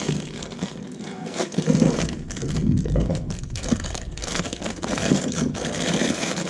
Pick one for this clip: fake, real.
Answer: fake